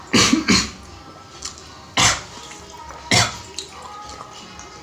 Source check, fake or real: real